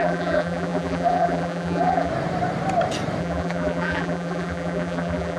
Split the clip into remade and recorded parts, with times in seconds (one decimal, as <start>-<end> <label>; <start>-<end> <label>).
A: 0.0-2.1 remade; 2.1-3.2 recorded; 3.2-5.4 remade

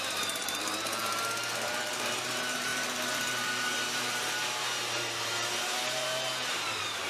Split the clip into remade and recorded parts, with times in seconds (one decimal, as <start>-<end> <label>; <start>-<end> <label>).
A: 0.0-7.1 remade

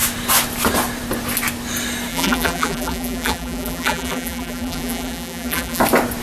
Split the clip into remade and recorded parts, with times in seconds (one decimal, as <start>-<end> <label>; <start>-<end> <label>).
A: 0.0-2.1 recorded; 2.1-5.8 remade; 5.8-6.2 recorded

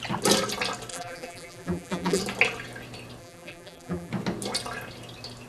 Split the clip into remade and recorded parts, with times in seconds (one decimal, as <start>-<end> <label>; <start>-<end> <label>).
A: 0.0-0.9 recorded; 0.9-2.2 remade; 2.2-3.2 recorded; 3.2-4.1 remade; 4.1-5.5 recorded